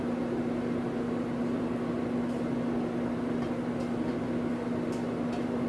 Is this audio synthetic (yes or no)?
no